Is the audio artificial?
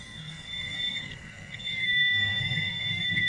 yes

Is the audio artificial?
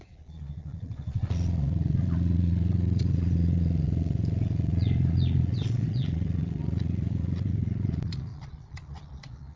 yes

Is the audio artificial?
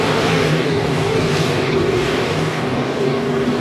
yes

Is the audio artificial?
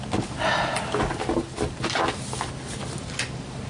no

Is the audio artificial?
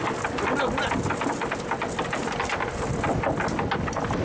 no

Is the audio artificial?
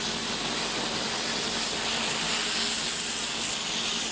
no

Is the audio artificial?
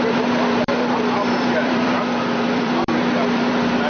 yes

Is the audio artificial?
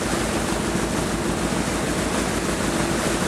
no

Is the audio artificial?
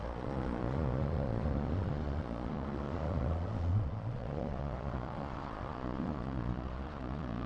yes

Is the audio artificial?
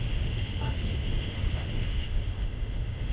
yes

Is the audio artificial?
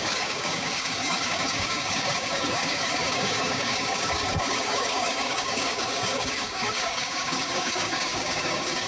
yes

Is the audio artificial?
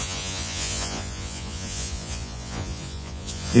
yes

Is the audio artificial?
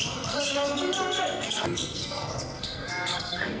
yes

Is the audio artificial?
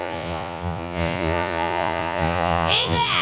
yes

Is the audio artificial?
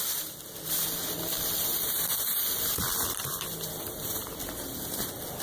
no